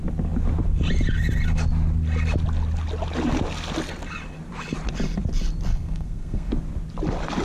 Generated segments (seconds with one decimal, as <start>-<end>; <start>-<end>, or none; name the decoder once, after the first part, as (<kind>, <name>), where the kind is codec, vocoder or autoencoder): 5.7-6.5 (codec, SNAC)